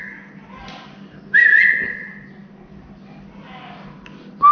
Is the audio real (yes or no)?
yes